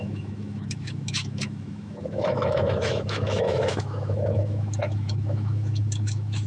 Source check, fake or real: fake